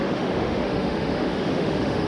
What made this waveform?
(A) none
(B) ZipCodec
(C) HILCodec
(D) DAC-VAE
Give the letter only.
D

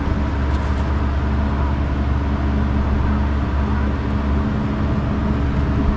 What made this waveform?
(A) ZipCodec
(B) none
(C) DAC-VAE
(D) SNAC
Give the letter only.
B